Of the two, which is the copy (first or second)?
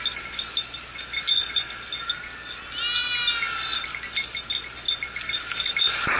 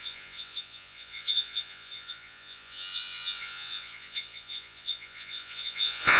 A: second